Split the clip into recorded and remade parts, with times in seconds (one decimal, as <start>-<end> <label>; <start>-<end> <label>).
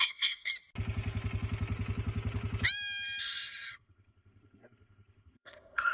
0.0-0.5 remade; 0.5-3.2 recorded; 3.2-5.9 remade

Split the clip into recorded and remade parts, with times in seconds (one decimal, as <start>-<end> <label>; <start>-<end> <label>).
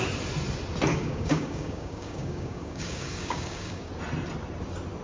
0.0-0.9 recorded; 0.9-3.9 remade; 3.9-5.0 recorded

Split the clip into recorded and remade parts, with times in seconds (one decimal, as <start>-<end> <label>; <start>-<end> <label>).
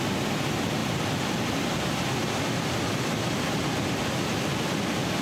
0.0-5.2 recorded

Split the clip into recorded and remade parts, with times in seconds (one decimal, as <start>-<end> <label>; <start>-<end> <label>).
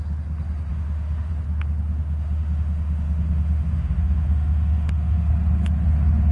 0.0-0.7 recorded; 0.7-1.3 remade; 1.3-2.0 recorded; 2.0-5.3 remade; 5.3-6.3 recorded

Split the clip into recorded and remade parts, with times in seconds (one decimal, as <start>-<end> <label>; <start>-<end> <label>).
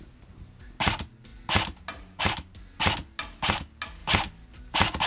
0.0-5.1 recorded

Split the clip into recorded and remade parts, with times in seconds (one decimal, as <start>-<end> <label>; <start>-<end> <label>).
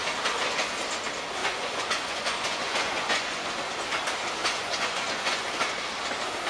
0.0-1.4 recorded; 1.4-3.5 remade; 3.5-4.4 recorded; 4.4-5.5 remade; 5.5-6.5 recorded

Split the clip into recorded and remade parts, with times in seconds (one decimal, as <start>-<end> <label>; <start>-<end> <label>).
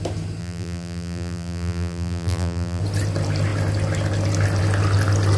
0.0-0.4 recorded; 0.4-2.8 remade; 2.8-5.4 recorded